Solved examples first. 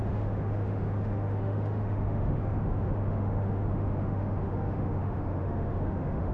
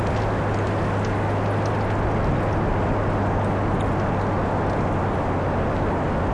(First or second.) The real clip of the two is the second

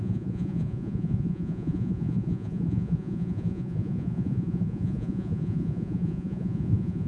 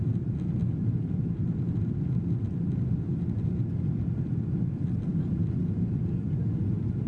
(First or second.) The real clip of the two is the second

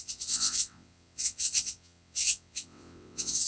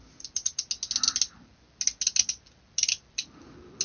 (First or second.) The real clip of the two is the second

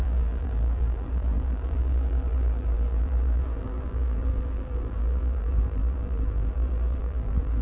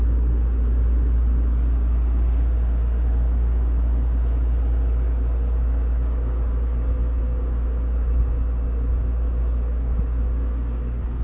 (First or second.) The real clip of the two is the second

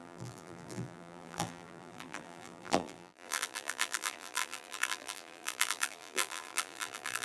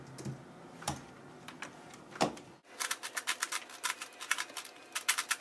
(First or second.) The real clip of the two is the second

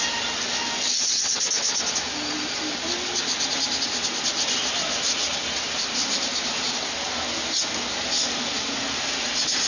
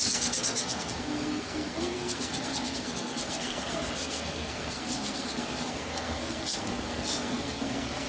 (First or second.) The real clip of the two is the first